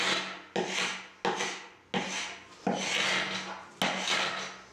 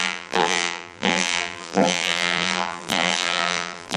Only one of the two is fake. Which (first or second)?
second